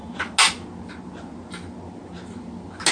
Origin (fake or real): real